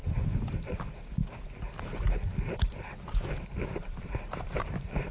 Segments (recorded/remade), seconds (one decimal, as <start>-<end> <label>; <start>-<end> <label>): 0.0-5.1 remade